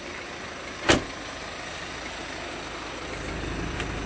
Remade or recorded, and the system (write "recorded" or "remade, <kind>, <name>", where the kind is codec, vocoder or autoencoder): recorded